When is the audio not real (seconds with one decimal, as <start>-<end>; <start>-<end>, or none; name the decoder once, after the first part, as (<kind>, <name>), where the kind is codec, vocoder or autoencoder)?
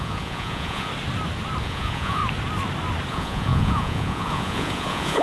0.0-0.9 (vocoder, Vocos); 1.6-2.2; 3.1-5.2